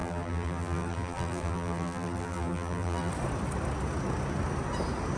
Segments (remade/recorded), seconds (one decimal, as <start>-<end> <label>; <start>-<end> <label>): 0.0-3.1 remade; 3.1-5.2 recorded